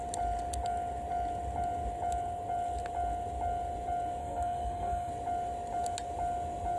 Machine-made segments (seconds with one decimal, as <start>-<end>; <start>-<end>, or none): 4.2-5.1